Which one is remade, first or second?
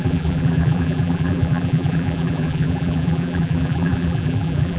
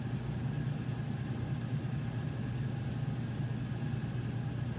first